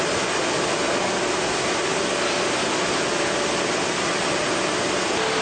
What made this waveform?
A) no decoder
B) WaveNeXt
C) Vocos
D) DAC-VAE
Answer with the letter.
A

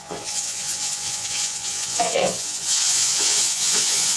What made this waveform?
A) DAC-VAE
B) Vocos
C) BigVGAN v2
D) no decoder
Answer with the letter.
B